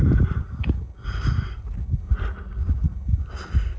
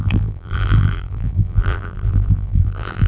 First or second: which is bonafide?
first